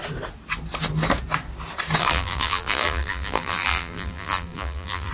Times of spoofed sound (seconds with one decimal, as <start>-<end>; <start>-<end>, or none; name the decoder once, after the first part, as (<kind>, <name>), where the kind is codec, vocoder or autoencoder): 2.0-5.1 (vocoder, BigVGAN v2)